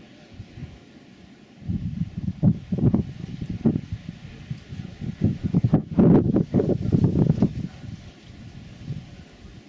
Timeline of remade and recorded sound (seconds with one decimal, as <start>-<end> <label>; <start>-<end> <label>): 0.0-9.7 recorded